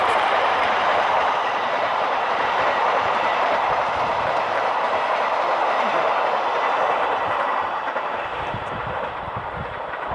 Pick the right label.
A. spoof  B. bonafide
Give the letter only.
A